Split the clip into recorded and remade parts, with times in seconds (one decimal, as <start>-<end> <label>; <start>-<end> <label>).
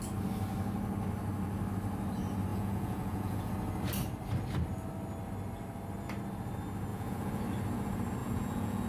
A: 0.0-2.5 recorded; 2.5-3.5 remade; 3.5-6.9 recorded; 6.9-7.4 remade; 7.4-8.2 recorded; 8.2-8.9 remade